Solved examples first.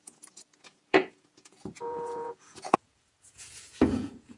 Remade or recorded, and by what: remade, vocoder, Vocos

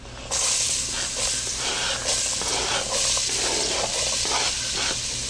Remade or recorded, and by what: recorded